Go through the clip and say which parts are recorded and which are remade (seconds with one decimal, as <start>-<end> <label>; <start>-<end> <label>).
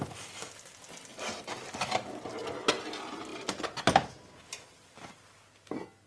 0.0-1.1 recorded; 1.1-2.3 remade; 2.3-6.1 recorded